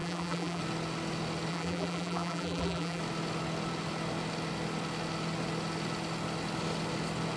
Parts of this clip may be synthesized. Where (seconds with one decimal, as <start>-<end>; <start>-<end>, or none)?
0.0-0.6; 1.5-3.0